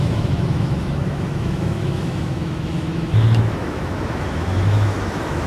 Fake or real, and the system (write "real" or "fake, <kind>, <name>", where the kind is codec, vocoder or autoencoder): fake, autoencoder, DAC-VAE